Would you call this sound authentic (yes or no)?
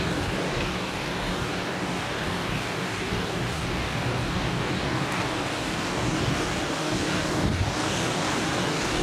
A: no